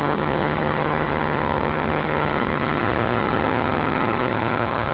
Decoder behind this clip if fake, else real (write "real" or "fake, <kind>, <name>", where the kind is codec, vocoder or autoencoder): fake, vocoder, HiFi-GAN